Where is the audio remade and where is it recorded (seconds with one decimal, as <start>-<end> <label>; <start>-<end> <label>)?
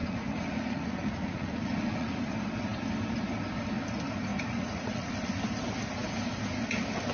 0.0-2.2 remade; 2.2-4.3 recorded; 4.3-5.1 remade; 5.1-7.1 recorded